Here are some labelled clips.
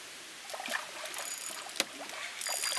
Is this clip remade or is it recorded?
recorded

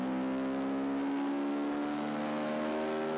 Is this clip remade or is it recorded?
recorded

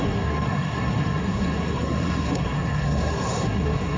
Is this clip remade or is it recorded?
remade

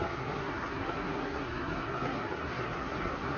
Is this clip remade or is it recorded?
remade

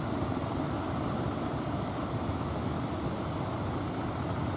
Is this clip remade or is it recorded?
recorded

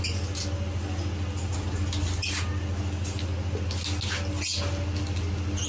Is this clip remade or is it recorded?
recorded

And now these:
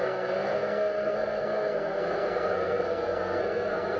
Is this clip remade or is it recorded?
remade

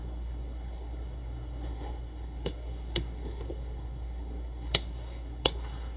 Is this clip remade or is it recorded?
remade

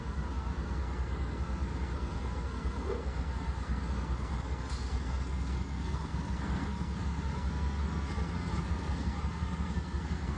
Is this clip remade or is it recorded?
remade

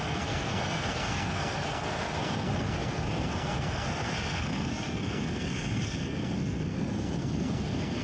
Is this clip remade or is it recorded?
remade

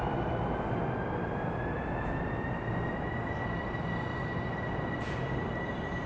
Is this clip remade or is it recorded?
recorded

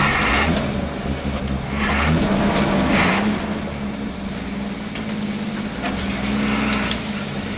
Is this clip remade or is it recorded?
recorded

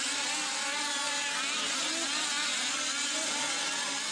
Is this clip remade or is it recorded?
recorded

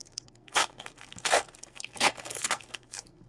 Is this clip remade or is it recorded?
remade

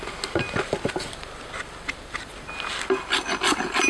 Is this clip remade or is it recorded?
recorded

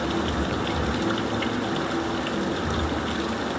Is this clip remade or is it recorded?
recorded